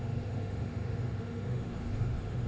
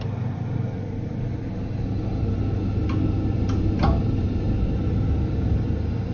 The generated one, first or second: first